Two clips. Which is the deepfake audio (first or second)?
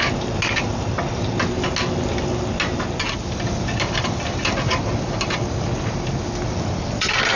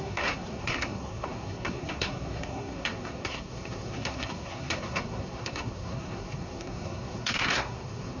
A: second